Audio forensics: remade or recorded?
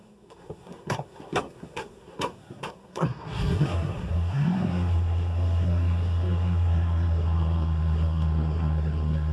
remade